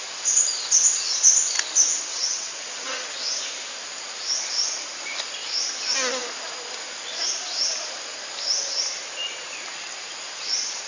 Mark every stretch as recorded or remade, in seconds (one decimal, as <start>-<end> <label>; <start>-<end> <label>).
0.0-2.1 recorded; 2.1-3.1 remade; 3.1-10.9 recorded